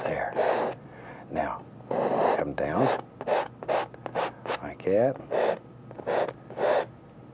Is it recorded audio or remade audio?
recorded